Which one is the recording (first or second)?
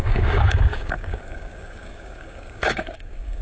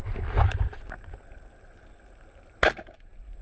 second